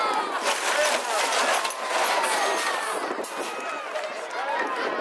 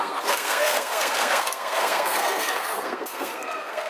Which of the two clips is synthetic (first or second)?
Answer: second